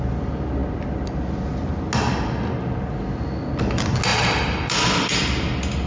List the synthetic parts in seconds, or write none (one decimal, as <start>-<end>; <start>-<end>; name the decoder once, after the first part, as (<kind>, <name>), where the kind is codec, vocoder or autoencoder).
none